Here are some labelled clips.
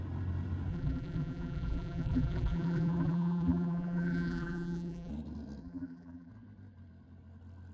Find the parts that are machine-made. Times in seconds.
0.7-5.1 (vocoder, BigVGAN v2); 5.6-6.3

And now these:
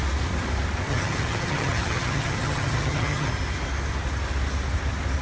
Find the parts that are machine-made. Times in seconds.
0.9-3.3 (vocoder, HiFi-GAN)